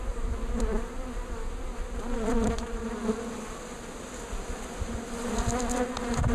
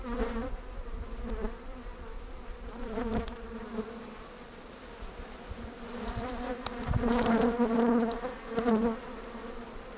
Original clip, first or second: first